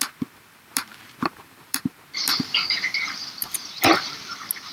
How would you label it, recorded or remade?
remade